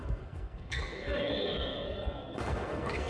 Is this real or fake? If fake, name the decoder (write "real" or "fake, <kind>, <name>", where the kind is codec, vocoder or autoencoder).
fake, codec, SNAC